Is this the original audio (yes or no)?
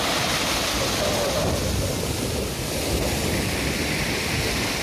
yes